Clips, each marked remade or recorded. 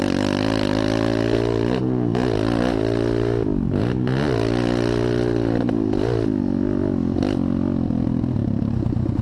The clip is recorded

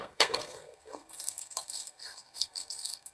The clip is remade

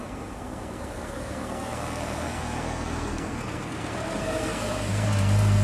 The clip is remade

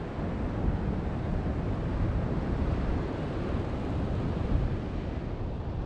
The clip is recorded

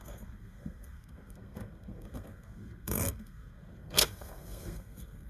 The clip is remade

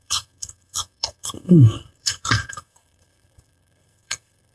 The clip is remade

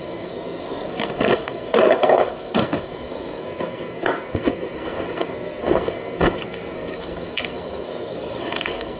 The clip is remade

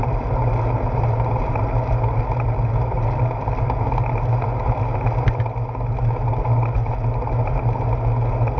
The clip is recorded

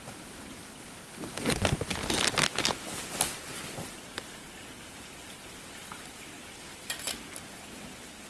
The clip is recorded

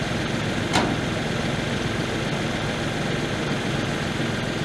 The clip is recorded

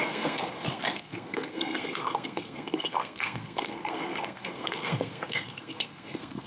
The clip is remade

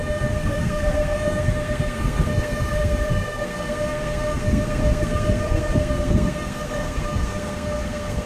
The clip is remade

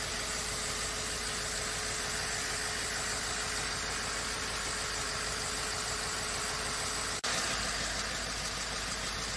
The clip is recorded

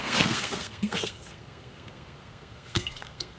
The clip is remade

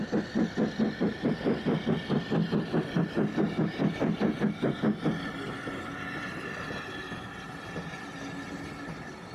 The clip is recorded